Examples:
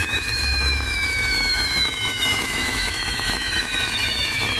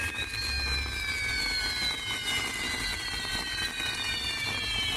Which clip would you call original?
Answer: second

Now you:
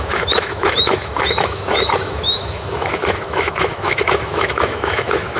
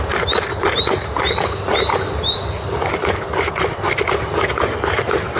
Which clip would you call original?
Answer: second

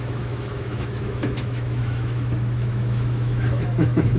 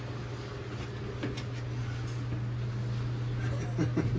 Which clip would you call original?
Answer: second